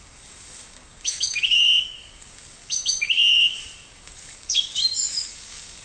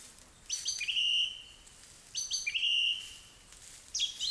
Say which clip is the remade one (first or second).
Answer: first